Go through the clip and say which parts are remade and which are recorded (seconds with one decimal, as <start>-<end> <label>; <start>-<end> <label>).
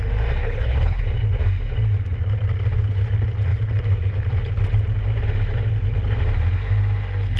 0.0-0.4 recorded; 0.4-1.0 remade; 1.0-7.4 recorded